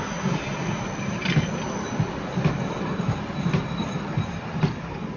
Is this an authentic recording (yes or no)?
yes